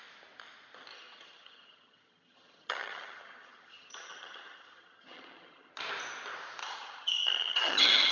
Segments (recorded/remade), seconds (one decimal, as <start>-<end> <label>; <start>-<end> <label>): 0.0-0.9 recorded; 0.9-5.7 remade; 5.7-6.6 recorded; 6.6-8.1 remade